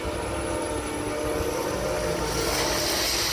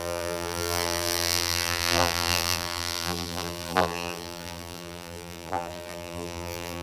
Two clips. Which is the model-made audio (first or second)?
second